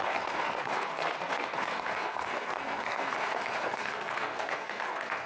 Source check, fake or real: fake